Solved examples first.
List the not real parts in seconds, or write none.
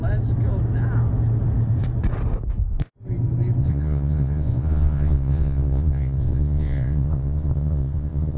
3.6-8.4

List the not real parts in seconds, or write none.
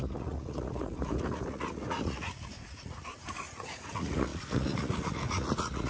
0.0-5.9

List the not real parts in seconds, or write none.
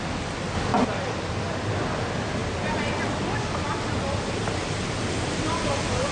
none